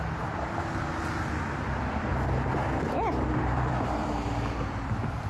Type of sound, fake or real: fake